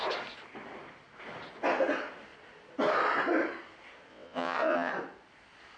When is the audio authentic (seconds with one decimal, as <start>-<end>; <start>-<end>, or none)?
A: 0.0-4.1; 4.9-5.8